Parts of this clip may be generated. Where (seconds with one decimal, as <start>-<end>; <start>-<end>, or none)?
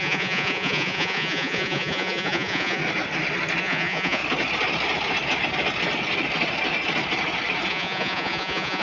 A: 0.0-2.8; 3.6-4.2; 7.7-8.8